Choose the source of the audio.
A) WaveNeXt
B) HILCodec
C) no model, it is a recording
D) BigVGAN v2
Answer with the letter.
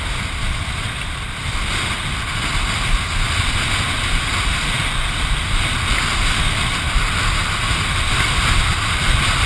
C